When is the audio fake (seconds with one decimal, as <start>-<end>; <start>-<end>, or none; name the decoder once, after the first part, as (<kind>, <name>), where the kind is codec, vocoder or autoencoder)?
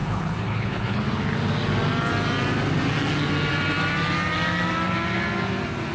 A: 0.0-1.0 (codec, HILCodec)